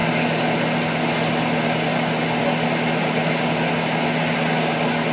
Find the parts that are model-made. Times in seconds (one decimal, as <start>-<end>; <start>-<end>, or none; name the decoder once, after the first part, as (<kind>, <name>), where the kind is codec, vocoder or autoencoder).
none